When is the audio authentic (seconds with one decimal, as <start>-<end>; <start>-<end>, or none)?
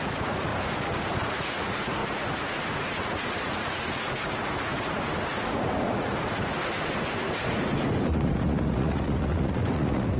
0.5-1.0